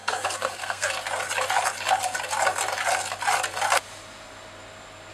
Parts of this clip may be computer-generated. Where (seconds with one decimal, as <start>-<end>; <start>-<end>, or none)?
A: 0.0-0.9